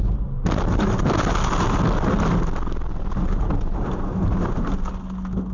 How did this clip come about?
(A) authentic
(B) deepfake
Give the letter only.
A